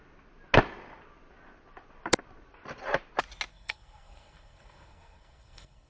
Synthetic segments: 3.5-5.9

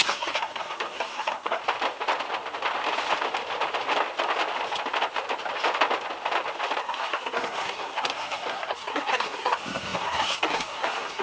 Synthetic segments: 0.0-1.6; 6.8-11.2

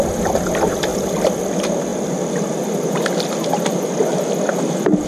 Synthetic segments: none

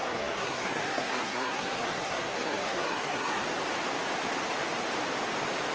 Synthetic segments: 0.0-3.4

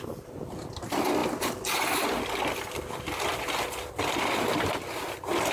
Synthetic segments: none

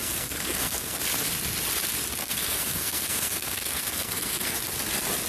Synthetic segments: 0.0-1.0; 2.2-4.6